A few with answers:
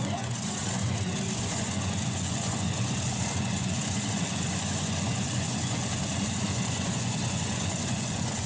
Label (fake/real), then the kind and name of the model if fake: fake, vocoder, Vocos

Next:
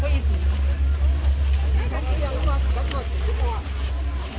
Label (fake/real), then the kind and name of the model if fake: real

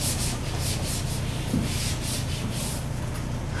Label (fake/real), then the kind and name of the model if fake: real